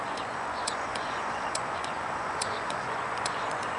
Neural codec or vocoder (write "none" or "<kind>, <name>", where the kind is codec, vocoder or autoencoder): vocoder, Vocos